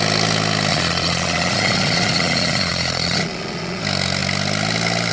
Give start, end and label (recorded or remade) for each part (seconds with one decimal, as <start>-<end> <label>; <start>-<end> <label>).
0.0-0.7 recorded; 0.7-3.8 remade; 3.8-5.1 recorded